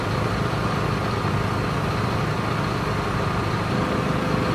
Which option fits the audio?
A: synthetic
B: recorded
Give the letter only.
B